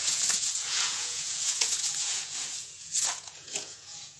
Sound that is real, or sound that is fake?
fake